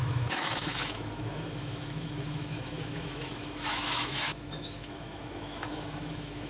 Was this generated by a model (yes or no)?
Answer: yes